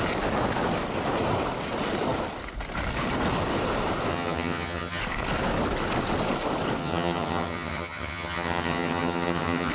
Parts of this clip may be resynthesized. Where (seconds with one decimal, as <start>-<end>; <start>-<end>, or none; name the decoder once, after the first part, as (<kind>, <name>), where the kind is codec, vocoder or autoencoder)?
4.1-5.0 (vocoder, HiFi-GAN); 6.8-9.7